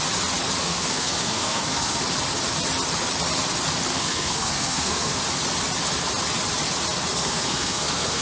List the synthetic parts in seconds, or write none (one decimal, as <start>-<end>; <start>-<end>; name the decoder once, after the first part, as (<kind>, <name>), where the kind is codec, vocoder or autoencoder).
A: 0.6-2.0 (codec, SNAC); 3.9-5.2; 7.1-8.2